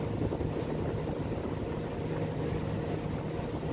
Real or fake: real